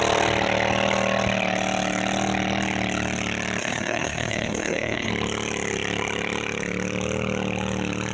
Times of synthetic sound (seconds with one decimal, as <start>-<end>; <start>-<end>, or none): 3.6-5.1